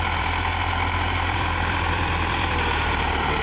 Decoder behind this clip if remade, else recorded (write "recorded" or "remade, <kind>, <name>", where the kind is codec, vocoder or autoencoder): remade, vocoder, BigVGAN v2